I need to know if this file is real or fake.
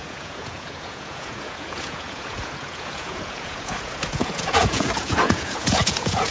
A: fake